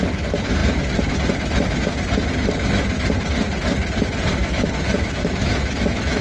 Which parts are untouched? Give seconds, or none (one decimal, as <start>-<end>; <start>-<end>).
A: 0.0-4.4